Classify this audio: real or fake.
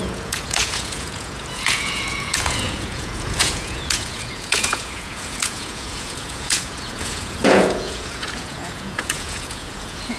fake